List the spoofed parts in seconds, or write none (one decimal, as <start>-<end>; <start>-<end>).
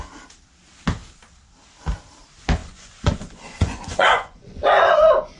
2.6-5.4